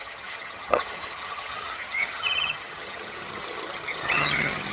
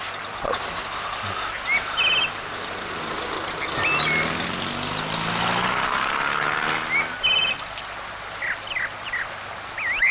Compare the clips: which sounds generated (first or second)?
first